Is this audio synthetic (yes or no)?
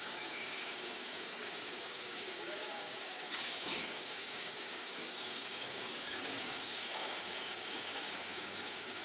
yes